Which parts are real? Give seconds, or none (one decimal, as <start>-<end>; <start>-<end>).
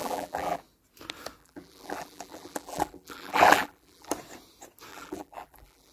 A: 0.6-1.4; 4.1-4.9